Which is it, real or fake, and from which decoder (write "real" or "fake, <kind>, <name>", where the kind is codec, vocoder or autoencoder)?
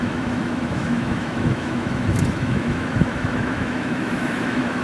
fake, autoencoder, DAC-VAE